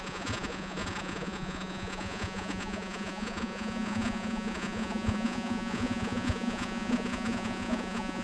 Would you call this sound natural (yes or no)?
no